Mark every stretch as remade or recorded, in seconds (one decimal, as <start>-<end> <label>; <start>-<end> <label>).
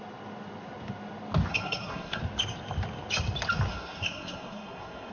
0.0-1.5 recorded; 1.5-2.2 remade; 2.2-3.7 recorded; 3.7-5.1 remade